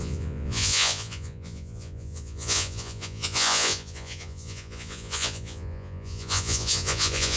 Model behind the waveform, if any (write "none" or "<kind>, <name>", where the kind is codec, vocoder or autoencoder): vocoder, Vocos